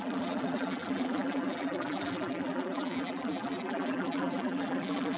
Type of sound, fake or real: fake